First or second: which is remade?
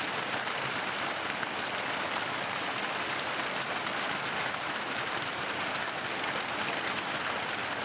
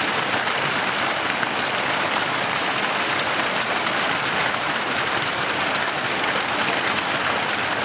second